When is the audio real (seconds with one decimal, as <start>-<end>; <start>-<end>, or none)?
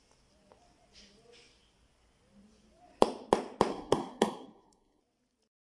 0.0-3.7; 5.0-5.7